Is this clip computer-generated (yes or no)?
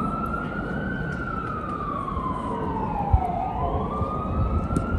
no